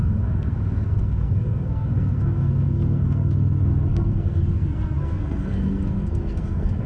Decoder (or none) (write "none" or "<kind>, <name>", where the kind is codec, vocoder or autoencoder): codec, SNAC